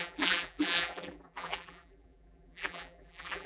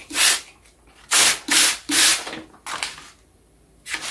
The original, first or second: second